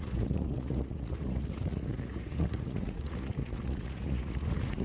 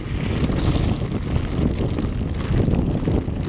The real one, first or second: second